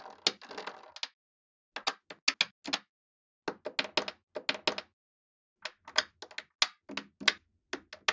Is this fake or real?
real